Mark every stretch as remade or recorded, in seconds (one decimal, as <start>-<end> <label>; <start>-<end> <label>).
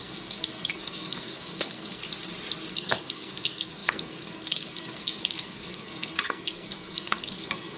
0.0-2.0 remade; 2.0-2.7 recorded; 2.7-7.8 remade